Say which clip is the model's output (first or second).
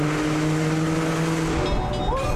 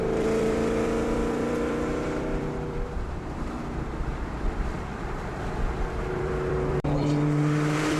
second